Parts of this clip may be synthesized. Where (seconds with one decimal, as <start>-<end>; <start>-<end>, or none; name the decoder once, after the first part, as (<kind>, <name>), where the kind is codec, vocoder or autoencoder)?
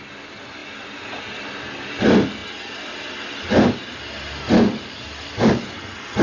0.6-1.2 (vocoder, BigVGAN v2)